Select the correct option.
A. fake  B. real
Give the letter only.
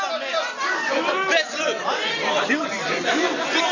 B